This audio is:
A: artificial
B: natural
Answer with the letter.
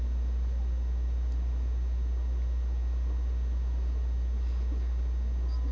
B